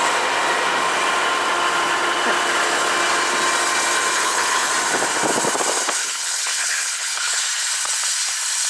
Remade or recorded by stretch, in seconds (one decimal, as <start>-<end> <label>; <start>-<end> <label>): 0.0-4.1 recorded; 4.1-4.7 remade; 4.7-6.0 recorded; 6.0-7.4 remade; 7.4-8.7 recorded